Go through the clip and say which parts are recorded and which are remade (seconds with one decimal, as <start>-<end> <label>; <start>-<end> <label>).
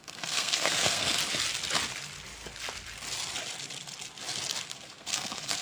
0.0-1.2 remade; 1.2-4.6 recorded; 4.6-5.6 remade